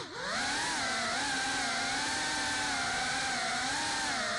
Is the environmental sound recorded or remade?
recorded